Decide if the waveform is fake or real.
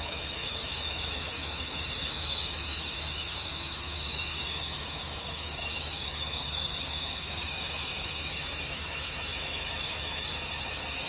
fake